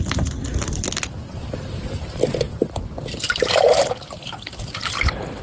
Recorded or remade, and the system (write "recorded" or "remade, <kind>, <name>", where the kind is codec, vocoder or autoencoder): remade, vocoder, BigVGAN v2